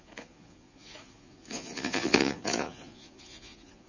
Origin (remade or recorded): remade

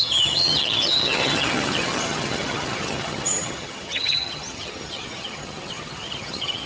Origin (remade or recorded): remade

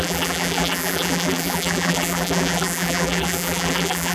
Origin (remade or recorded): remade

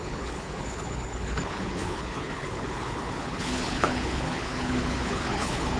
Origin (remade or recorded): remade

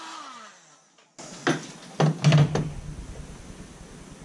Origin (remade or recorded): recorded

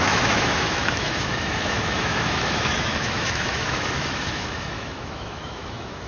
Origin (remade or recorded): remade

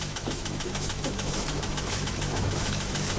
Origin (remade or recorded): remade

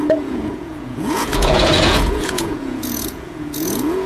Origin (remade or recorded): remade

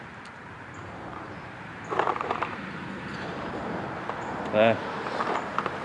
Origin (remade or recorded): remade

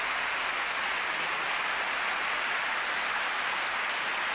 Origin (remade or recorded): recorded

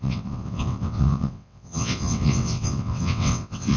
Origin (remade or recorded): remade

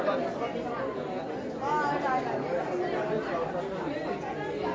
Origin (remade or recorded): recorded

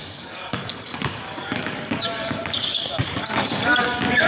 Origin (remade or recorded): remade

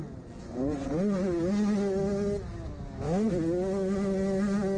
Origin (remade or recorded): recorded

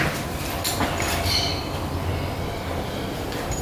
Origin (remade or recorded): recorded